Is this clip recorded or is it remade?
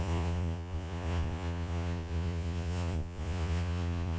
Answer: remade